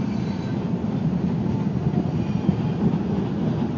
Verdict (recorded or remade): recorded